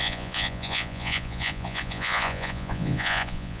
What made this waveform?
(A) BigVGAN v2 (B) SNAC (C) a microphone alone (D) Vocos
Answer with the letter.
D